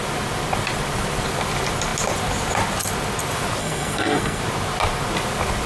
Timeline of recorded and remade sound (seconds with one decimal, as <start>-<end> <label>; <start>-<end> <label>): 0.0-3.6 recorded; 3.6-4.4 remade; 4.4-5.7 recorded